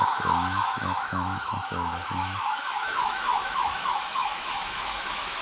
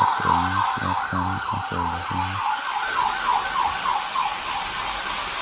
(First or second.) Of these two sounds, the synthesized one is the first